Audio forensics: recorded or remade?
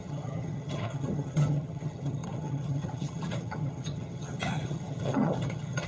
remade